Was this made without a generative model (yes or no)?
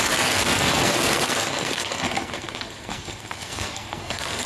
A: no